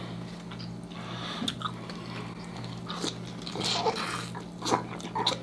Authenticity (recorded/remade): recorded